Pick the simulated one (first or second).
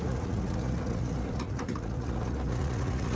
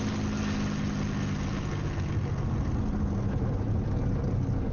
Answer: first